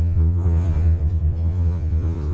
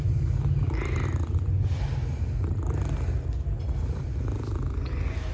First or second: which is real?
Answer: second